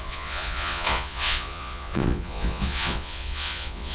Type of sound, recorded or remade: remade